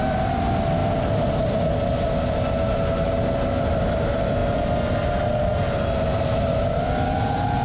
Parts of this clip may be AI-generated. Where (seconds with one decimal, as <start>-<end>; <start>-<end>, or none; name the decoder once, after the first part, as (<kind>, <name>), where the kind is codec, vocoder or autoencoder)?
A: 0.0-0.8 (vocoder, BigVGAN v2); 3.7-4.4; 6.5-7.6